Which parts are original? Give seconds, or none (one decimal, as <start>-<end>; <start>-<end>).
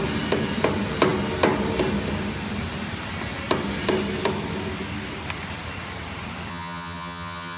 0.0-6.5